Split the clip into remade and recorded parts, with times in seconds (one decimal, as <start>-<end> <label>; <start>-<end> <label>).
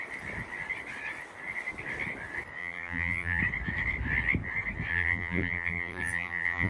0.0-2.6 recorded; 2.6-3.4 remade; 3.4-4.9 recorded; 4.9-6.7 remade